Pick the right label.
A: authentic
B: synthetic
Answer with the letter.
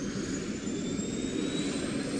A